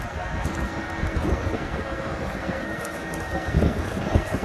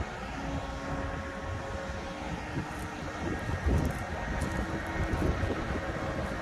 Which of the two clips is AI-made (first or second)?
first